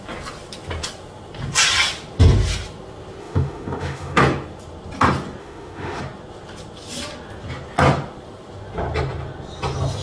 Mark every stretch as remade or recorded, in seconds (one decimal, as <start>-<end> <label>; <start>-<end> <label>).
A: 0.0-3.2 recorded; 3.2-4.2 remade; 4.2-5.4 recorded; 5.4-6.0 remade; 6.0-10.0 recorded